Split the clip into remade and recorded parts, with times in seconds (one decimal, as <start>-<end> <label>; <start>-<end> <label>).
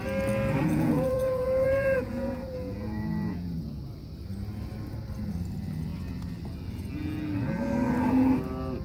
0.0-0.6 recorded; 0.6-3.7 remade; 3.7-8.8 recorded